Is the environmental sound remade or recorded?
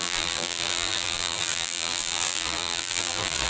remade